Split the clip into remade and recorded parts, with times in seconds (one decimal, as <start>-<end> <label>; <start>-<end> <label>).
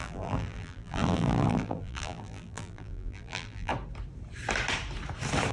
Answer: 0.0-3.7 remade; 3.7-5.5 recorded